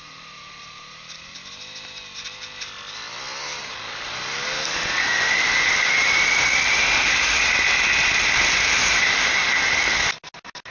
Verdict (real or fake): real